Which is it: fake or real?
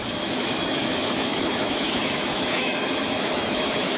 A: fake